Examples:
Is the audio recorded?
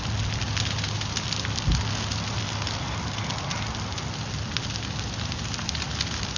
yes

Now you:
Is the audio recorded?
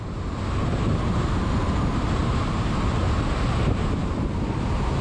no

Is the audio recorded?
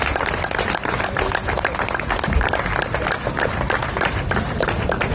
no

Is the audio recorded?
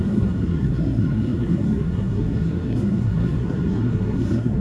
no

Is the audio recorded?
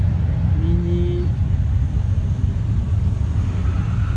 yes